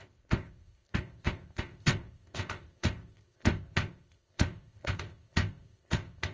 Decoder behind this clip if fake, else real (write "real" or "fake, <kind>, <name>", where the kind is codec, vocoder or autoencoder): fake, codec, ZipCodec